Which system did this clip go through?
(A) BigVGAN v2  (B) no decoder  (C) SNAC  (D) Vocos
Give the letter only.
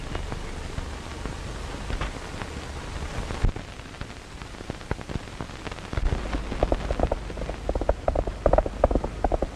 B